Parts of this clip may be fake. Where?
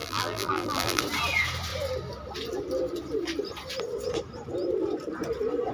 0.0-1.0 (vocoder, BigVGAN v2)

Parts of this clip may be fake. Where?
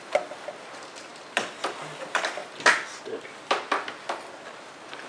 none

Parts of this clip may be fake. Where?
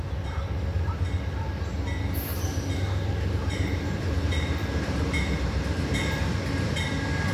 2.3-6.4 (vocoder, BigVGAN v2)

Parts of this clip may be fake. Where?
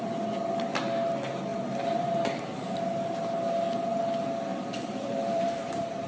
4.5-6.1 (vocoder, BigVGAN v2)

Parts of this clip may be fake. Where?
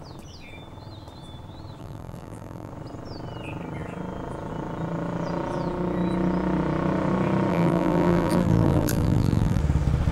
1.8-2.7 (vocoder, BigVGAN v2); 7.5-9.6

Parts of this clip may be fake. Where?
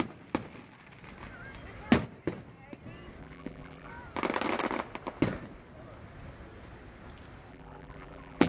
3.2-3.9 (vocoder, BigVGAN v2); 7.5-8.5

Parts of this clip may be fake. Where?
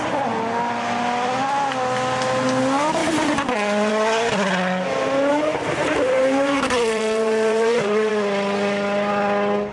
5.3-8.1 (vocoder, BigVGAN v2)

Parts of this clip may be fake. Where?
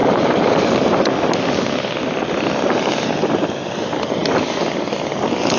0.0-1.0 (vocoder, BigVGAN v2)